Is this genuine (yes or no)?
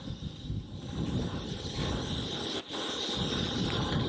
yes